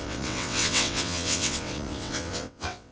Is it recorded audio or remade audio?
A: remade